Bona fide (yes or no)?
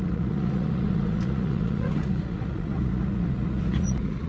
no